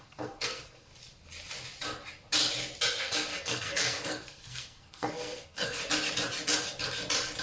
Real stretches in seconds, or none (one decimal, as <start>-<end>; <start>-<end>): 0.9-3.0; 5.8-7.4